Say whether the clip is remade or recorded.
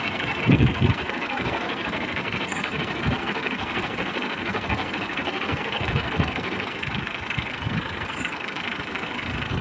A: remade